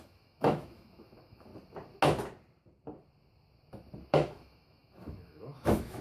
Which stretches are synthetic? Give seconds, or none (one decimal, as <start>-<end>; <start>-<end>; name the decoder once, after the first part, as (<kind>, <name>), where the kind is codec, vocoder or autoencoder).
0.0-1.5 (autoencoder, DAC-VAE); 4.1-6.0